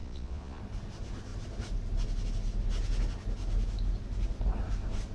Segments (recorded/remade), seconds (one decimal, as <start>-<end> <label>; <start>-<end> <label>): 0.0-0.6 remade; 0.6-5.1 recorded